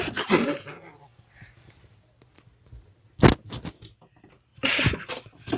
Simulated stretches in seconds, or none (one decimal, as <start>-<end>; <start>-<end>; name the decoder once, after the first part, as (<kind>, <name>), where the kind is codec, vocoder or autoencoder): 4.5-5.1 (vocoder, BigVGAN v2)